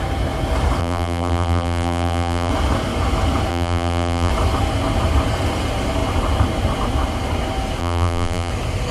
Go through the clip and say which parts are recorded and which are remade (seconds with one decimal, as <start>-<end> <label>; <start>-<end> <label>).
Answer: 0.0-0.8 recorded; 0.8-2.5 remade; 2.5-3.5 recorded; 3.5-4.3 remade; 4.3-7.8 recorded; 7.8-8.5 remade; 8.5-8.9 recorded